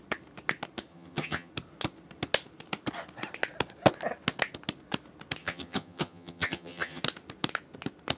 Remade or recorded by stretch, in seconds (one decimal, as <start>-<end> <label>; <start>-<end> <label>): 0.0-0.9 recorded; 0.9-1.5 remade; 1.5-5.4 recorded; 5.4-7.0 remade; 7.0-8.2 recorded